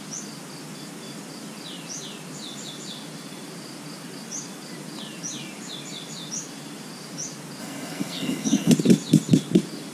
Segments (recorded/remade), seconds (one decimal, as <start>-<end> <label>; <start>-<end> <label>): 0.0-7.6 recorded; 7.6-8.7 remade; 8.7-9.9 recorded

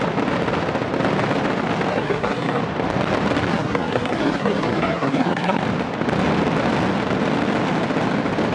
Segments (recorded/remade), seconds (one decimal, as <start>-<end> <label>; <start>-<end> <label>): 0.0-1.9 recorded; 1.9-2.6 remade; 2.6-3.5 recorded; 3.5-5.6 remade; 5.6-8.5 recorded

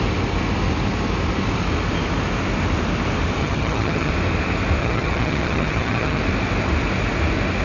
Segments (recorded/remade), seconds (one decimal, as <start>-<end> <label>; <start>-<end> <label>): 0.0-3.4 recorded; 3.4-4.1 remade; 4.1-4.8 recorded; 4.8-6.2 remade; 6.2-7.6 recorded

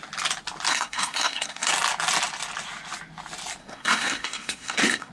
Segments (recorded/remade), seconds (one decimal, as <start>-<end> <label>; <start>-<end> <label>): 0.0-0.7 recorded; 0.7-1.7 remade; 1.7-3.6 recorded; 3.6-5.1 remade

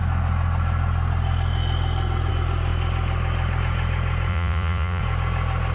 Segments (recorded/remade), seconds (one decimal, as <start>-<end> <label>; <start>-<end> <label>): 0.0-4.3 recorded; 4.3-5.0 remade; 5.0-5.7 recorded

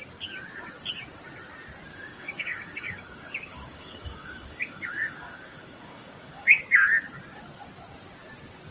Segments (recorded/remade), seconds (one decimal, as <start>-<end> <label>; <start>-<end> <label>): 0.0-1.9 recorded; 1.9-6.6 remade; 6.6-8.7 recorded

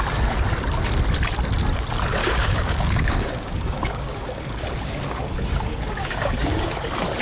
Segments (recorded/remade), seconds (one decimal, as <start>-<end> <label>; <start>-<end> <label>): 0.0-2.2 recorded; 2.2-4.6 remade; 4.6-5.7 recorded; 5.7-6.7 remade; 6.7-7.2 recorded